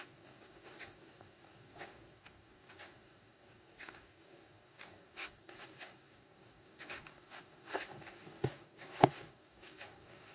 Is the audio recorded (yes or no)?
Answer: no